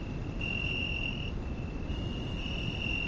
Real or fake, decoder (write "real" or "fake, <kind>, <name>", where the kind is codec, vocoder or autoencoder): real